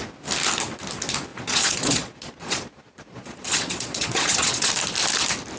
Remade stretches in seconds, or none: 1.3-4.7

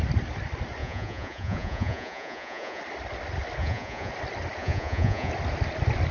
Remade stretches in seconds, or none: 0.8-2.8; 3.6-4.1; 4.6-5.3

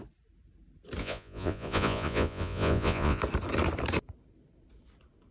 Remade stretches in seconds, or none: 1.0-3.2

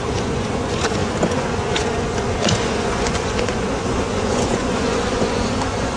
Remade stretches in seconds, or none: 0.0-6.0

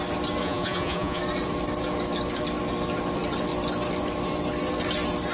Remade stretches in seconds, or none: 0.4-1.2

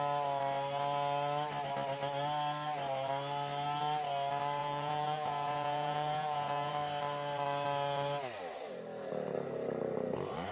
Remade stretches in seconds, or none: 4.6-6.7